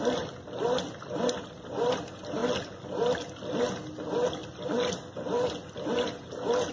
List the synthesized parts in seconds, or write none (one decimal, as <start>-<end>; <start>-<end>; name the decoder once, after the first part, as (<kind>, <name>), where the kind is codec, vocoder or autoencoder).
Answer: none